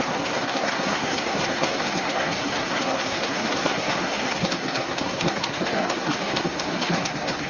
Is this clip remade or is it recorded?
remade